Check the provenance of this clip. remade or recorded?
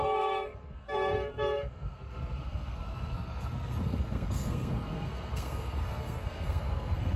remade